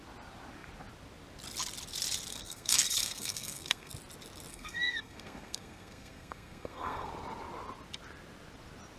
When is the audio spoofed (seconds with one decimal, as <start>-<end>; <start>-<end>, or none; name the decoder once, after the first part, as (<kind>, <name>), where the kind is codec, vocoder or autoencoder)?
2.3-3.9 (codec, SNAC); 4.5-7.1

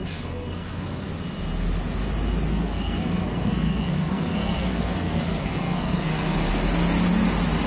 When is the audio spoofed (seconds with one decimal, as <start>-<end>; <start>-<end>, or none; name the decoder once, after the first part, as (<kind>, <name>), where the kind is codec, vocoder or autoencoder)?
0.0-1.1 (codec, SNAC); 2.5-6.5

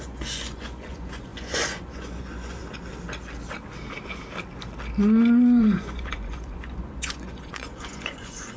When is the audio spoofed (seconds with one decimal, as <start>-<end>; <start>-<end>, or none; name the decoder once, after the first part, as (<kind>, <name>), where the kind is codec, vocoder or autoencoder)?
0.0-2.6 (vocoder, Vocos); 5.6-8.6

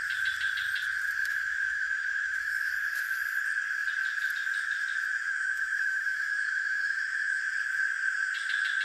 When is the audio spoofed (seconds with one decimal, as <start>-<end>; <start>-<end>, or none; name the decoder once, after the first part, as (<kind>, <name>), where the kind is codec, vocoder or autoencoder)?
1.2-2.7 (autoencoder, DAC-VAE); 5.3-7.4

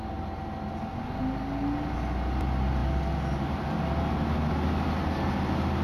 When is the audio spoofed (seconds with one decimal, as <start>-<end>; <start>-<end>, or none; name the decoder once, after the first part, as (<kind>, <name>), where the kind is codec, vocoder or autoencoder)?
none

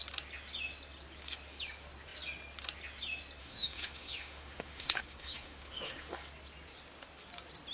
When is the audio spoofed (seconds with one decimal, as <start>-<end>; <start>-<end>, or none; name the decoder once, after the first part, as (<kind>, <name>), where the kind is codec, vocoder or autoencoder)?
3.4-6.1 (autoencoder, DAC-VAE)

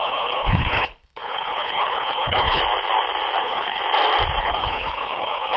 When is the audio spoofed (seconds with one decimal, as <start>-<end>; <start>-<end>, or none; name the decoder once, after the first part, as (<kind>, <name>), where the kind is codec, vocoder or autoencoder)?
0.0-2.6 (codec, HILCodec); 3.4-3.8; 4.4-5.6

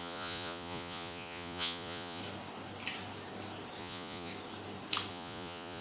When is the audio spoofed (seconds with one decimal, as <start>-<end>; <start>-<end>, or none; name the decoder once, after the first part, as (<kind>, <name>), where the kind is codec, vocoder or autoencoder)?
0.0-2.2 (vocoder, Vocos); 3.8-4.3; 5.1-5.8